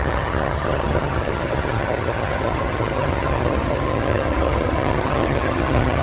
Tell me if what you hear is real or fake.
fake